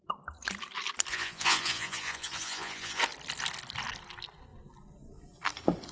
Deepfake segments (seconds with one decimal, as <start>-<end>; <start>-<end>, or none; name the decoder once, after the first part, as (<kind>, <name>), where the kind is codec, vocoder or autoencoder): 1.1-3.0 (vocoder, Vocos)